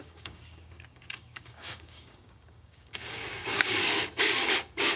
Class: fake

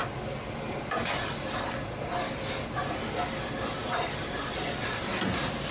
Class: real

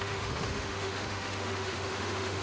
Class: fake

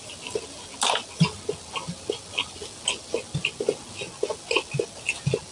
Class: real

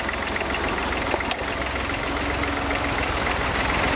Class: real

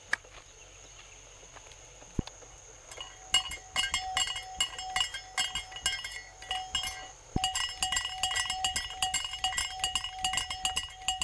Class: real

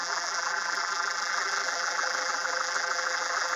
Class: fake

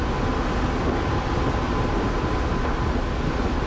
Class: real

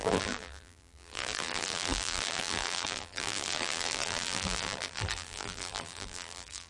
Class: fake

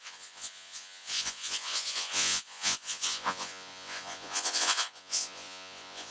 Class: fake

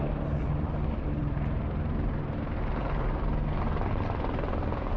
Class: fake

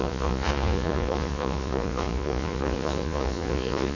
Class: fake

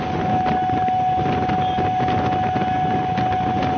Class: real